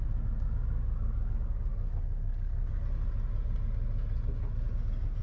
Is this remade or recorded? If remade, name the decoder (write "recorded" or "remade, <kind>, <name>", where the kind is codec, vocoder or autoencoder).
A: recorded